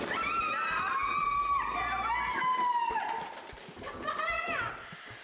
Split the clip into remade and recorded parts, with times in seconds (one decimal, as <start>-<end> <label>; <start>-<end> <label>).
0.0-5.2 recorded

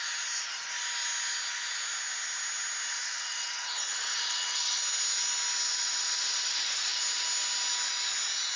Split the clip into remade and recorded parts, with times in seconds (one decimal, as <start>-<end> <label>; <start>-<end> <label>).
0.0-3.0 recorded; 3.0-4.8 remade; 4.8-5.7 recorded; 5.7-7.0 remade; 7.0-8.6 recorded